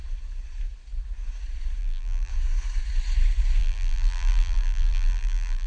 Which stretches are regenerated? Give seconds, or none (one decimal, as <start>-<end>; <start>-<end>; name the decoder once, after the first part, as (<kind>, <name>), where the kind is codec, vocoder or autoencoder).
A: 1.8-2.3 (vocoder, BigVGAN v2); 3.6-5.7